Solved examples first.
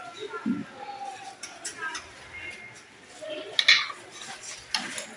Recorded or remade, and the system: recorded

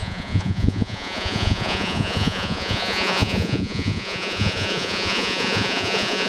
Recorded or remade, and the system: remade, vocoder, Vocos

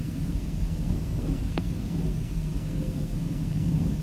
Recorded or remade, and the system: remade, codec, SNAC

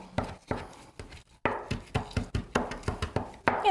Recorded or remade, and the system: recorded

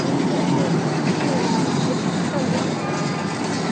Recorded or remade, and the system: recorded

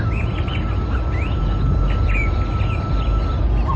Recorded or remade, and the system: recorded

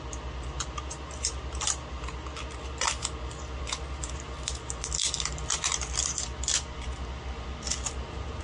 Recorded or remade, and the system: recorded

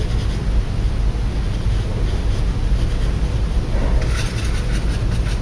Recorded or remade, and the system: recorded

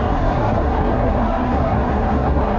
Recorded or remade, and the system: remade, codec, SNAC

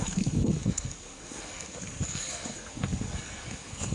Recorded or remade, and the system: remade, codec, SNAC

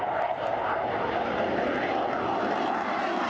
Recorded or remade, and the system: recorded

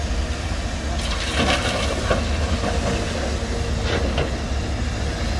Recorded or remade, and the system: recorded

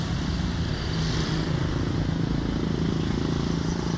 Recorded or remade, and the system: recorded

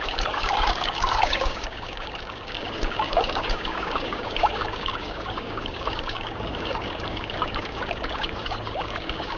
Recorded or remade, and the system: remade, codec, DAC